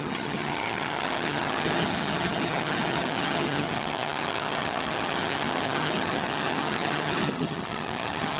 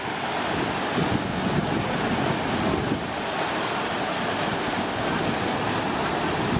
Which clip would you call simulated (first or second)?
first